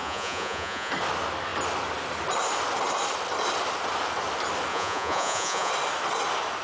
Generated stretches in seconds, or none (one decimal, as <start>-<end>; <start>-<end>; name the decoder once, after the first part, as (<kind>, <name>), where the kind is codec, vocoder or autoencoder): 0.0-0.9 (vocoder, Vocos); 4.7-5.7